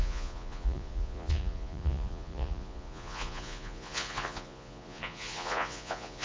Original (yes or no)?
no